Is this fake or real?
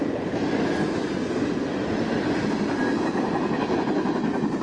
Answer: real